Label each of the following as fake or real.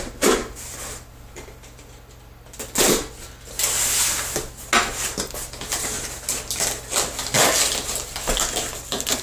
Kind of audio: real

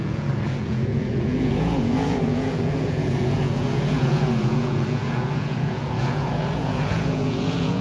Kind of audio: fake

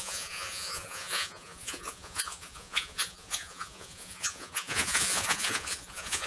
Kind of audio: fake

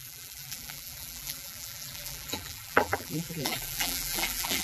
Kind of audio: fake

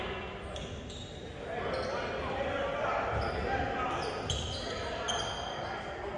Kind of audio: real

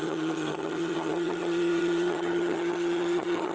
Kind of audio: fake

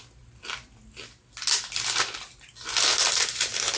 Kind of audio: real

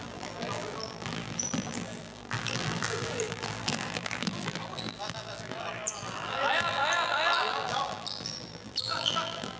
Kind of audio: fake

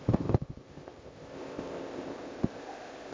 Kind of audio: fake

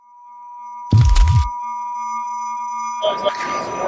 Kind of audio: real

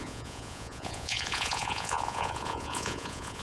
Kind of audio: fake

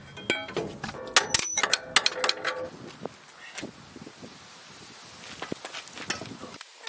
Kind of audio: real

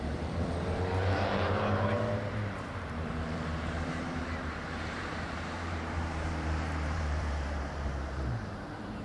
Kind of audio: fake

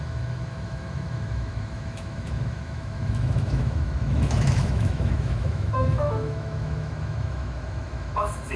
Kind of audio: fake